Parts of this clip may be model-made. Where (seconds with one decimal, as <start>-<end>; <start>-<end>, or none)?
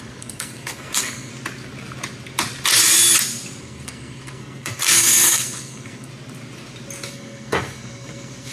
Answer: 0.0-1.3; 3.6-6.1; 7.1-8.5